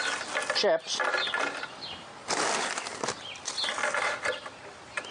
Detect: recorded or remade recorded